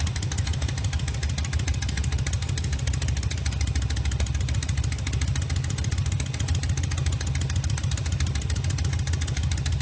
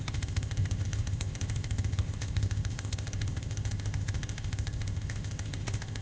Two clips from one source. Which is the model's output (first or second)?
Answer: second